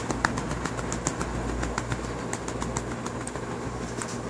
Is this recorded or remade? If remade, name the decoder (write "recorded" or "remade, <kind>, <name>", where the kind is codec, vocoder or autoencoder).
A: recorded